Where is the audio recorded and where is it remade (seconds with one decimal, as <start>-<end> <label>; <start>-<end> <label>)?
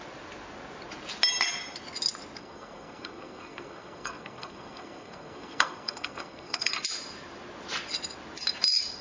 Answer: 0.0-2.4 recorded; 2.4-6.7 remade; 6.7-9.0 recorded